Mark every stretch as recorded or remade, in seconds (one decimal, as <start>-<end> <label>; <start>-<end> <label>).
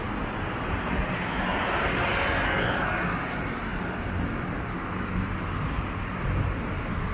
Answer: 0.0-7.1 recorded